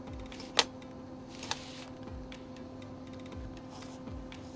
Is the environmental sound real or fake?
real